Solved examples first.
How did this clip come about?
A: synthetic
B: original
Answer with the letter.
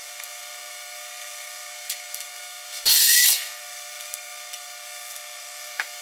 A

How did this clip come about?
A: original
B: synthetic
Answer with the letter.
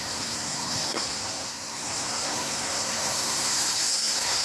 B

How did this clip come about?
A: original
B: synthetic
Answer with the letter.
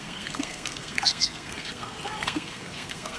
B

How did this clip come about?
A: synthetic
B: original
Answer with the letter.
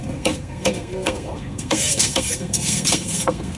A